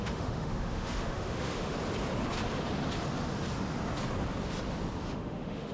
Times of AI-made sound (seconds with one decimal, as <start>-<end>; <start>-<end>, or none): 0.0-1.8; 5.0-5.7